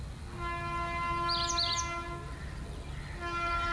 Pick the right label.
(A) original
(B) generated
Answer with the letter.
A